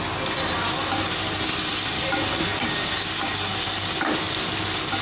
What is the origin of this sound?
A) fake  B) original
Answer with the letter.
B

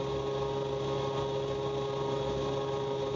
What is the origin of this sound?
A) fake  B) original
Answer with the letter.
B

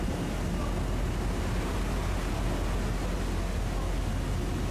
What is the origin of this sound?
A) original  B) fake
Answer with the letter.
A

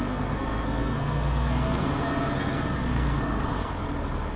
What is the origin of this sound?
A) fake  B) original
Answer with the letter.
A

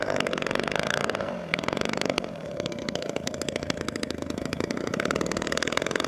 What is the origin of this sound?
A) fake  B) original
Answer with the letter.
A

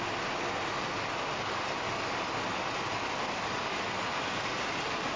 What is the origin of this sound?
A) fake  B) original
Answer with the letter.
B